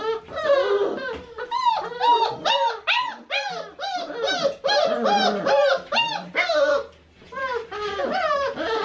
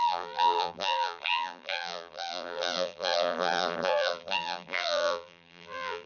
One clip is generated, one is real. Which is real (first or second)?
first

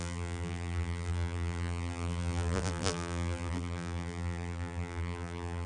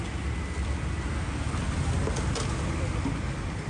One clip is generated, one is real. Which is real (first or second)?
second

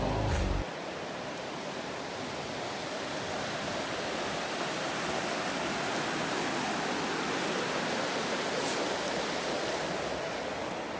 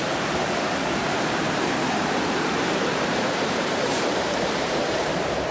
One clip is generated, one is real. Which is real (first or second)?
first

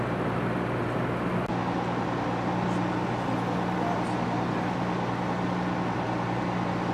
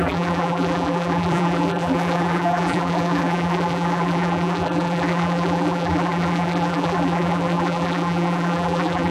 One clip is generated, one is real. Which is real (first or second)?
first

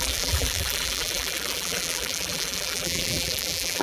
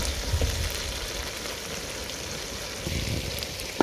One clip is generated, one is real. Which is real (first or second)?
second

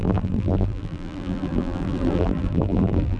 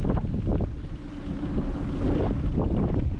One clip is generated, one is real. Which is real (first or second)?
second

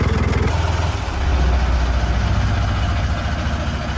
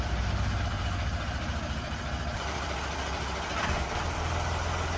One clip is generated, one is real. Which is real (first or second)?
first